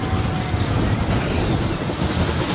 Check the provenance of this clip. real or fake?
real